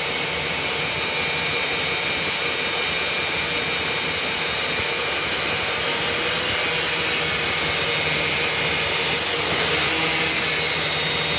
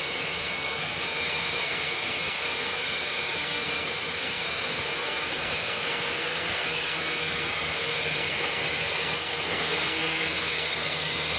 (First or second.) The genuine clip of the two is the first